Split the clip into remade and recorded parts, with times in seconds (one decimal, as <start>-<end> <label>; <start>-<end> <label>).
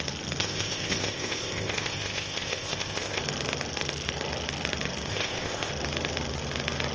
0.0-0.4 recorded; 0.4-3.2 remade; 3.2-5.1 recorded; 5.1-5.7 remade; 5.7-6.9 recorded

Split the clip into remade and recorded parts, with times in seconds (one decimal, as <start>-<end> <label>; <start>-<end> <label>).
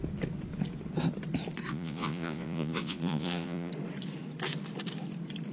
0.0-1.7 recorded; 1.7-3.7 remade; 3.7-5.5 recorded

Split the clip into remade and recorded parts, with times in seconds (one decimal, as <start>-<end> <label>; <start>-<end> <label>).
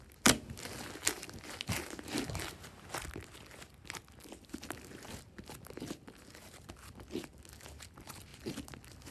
0.0-9.1 recorded